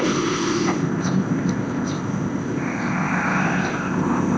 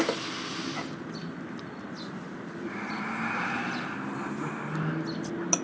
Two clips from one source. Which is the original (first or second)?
second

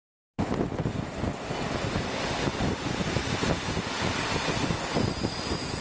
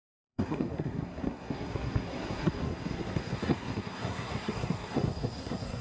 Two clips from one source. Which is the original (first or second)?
first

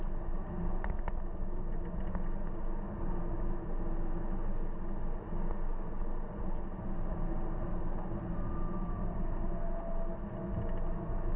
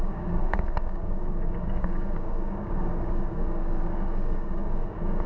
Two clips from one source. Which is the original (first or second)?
first